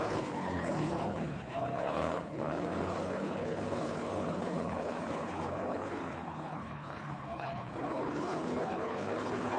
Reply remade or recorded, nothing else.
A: remade